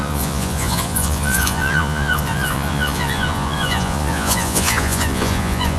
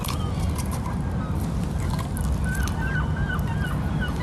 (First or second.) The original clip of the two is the second